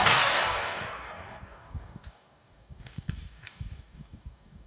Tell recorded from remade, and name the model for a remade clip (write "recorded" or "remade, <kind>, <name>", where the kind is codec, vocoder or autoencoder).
remade, codec, DAC